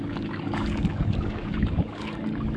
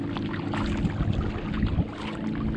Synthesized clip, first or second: first